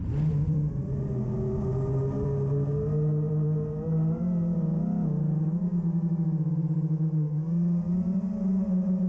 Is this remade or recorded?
recorded